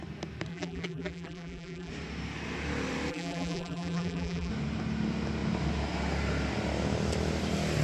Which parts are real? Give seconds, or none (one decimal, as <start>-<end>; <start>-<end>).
0.0-0.5; 1.9-3.1; 4.5-7.8